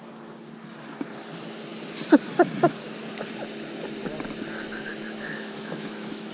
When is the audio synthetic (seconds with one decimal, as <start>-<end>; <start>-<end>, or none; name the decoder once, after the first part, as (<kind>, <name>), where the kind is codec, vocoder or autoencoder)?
4.9-6.3 (autoencoder, DAC-VAE)